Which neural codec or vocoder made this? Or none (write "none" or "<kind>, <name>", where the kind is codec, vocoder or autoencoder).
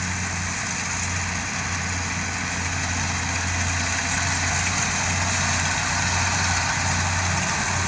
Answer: none